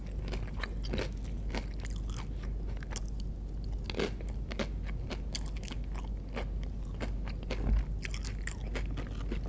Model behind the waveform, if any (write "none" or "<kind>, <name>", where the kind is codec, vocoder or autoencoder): none